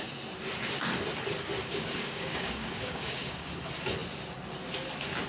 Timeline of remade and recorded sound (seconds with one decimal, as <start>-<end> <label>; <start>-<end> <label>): 0.0-1.6 recorded; 1.6-3.5 remade; 3.5-5.3 recorded